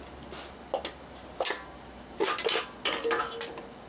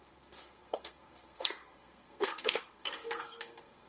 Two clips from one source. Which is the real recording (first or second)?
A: first